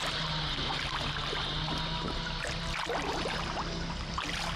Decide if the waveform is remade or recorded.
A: recorded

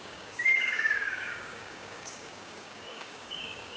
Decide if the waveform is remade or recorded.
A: remade